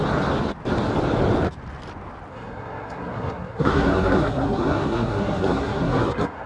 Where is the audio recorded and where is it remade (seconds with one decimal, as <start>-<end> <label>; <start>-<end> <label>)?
0.0-2.3 recorded; 2.3-6.5 remade